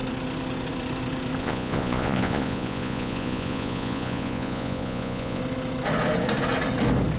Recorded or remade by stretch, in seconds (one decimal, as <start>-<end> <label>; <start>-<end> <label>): 0.0-1.4 recorded; 1.4-5.4 remade; 5.4-7.2 recorded